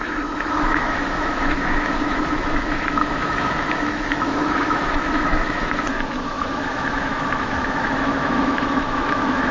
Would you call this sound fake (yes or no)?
yes